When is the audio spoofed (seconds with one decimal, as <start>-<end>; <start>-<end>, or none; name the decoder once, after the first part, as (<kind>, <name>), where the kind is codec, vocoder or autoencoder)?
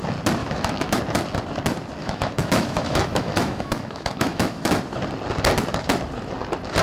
0.4-1.0 (autoencoder, DAC-VAE); 2.0-4.8